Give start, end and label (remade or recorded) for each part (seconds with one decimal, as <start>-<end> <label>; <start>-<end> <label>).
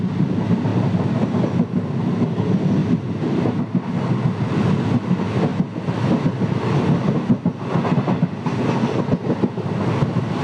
0.0-10.4 recorded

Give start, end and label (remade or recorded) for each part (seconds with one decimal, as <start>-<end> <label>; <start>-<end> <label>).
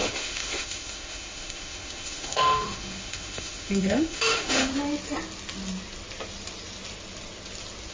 0.0-4.7 remade; 4.7-7.9 recorded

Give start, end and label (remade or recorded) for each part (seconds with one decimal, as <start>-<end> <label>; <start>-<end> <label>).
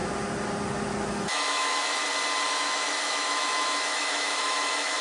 0.0-1.1 recorded; 1.1-2.0 remade; 2.0-2.5 recorded; 2.5-5.0 remade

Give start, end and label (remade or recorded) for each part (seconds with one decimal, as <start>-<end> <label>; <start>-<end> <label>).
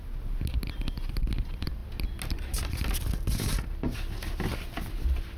0.0-5.4 recorded